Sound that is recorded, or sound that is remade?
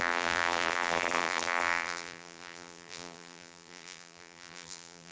remade